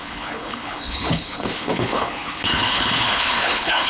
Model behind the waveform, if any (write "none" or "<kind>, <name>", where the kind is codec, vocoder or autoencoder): codec, HILCodec